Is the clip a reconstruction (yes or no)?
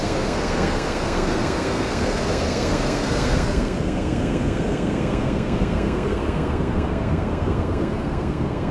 yes